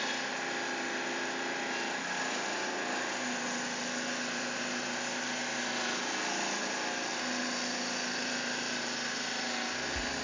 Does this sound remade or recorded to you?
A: recorded